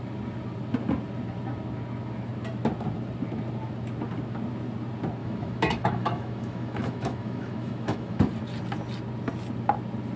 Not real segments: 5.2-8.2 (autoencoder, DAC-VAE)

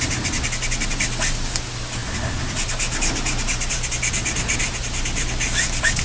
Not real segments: none

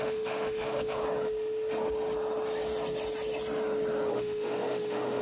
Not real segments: 0.0-1.0 (autoencoder, DAC-VAE); 4.1-5.2

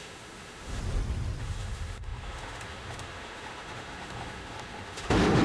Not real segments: 0.0-0.8 (autoencoder, DAC-VAE); 1.4-5.4

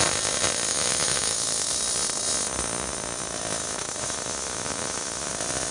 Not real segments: 0.7-1.8 (autoencoder, DAC-VAE); 3.6-5.3

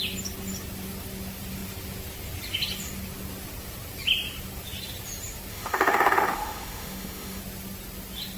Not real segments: 5.5-7.4 (autoencoder, DAC-VAE)